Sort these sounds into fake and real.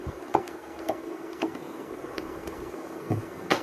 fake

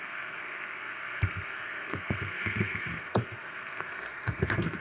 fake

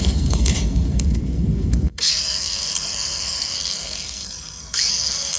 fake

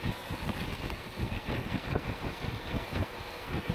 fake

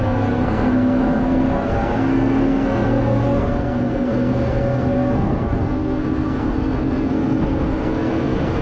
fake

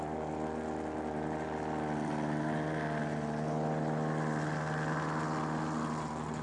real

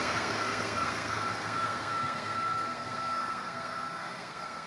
fake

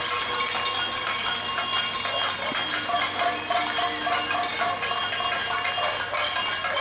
real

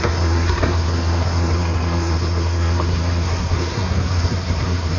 fake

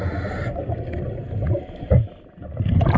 real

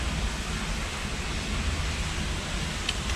real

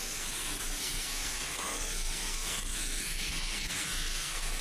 fake